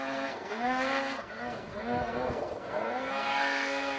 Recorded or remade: remade